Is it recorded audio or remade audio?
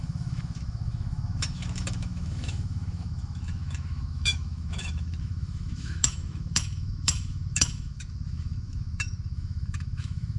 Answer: remade